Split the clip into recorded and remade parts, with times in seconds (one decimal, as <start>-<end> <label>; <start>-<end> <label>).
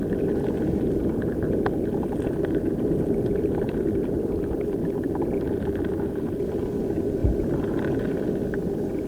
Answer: 0.0-9.1 recorded